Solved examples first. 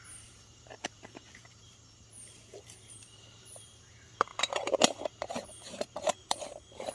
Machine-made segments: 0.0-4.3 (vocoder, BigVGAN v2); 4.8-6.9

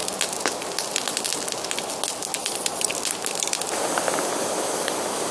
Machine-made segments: 2.4-2.9 (vocoder, Vocos)

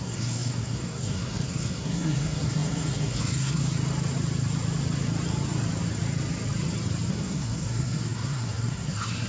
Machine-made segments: 0.0-3.6 (codec, SNAC); 7.1-9.3

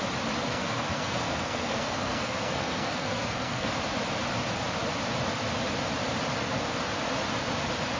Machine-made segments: 0.4-3.7 (codec, SNAC)

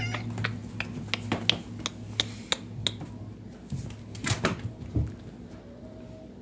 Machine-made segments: none

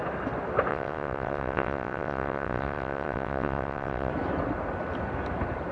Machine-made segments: 0.7-4.1 (vocoder, WaveNeXt)